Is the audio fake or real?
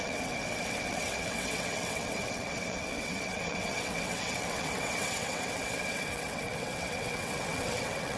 fake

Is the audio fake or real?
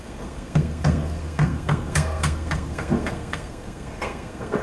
fake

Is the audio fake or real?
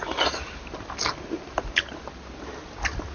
real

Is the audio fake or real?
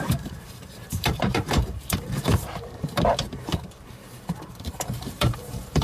fake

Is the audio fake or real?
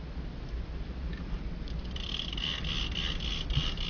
real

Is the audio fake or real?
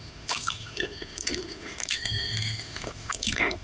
fake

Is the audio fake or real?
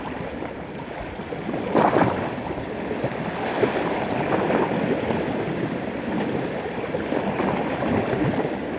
real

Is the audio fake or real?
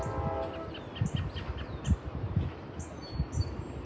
real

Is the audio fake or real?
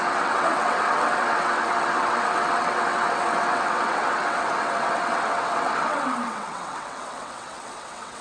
fake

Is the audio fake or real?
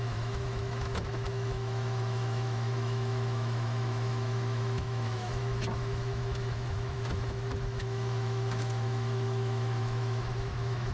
fake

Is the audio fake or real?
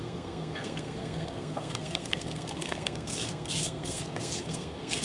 fake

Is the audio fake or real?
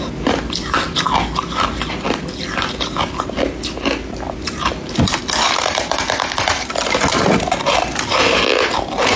real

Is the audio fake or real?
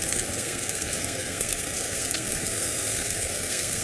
fake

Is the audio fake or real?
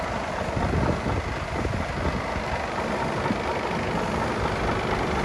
real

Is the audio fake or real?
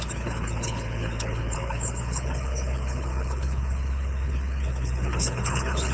fake